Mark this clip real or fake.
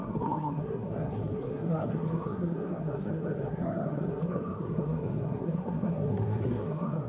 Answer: fake